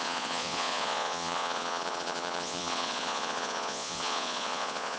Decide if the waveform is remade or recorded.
remade